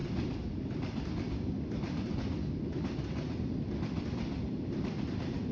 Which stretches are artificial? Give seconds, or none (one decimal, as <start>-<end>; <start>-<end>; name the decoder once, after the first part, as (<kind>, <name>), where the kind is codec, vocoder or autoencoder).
none